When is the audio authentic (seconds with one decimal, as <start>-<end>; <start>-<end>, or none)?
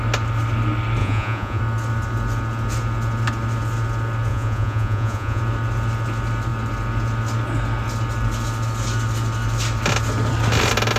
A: 0.0-1.0; 1.6-4.3; 5.4-11.0